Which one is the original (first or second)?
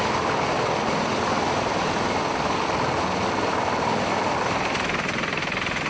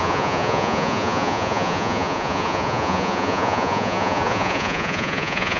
first